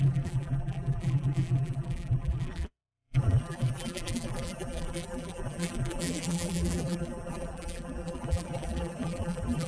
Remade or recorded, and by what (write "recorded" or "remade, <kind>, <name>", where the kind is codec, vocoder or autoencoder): remade, vocoder, BigVGAN v2